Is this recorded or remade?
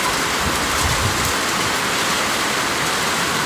recorded